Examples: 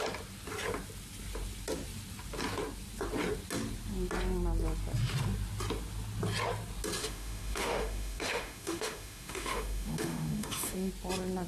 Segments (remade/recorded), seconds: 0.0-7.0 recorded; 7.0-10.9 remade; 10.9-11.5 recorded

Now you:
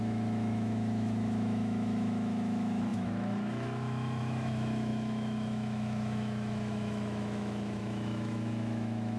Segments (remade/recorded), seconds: 0.0-9.2 remade

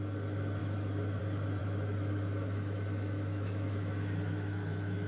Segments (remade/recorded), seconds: 0.0-0.6 recorded; 0.6-1.2 remade; 1.2-1.6 recorded; 1.6-5.1 remade

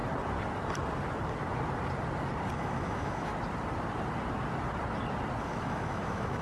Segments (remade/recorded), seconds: 0.0-2.5 recorded; 2.5-3.3 remade; 3.3-5.4 recorded; 5.4-6.4 remade

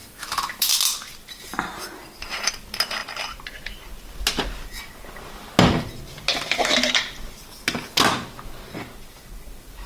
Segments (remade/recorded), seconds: 0.0-0.7 remade; 0.7-9.9 recorded

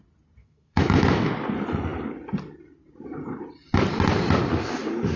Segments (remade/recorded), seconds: 0.0-0.4 recorded; 0.4-1.3 remade; 1.3-5.2 recorded